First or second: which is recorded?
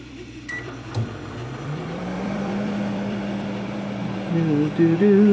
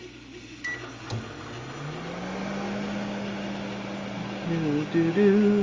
second